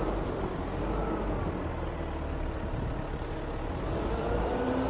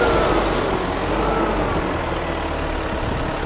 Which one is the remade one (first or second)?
first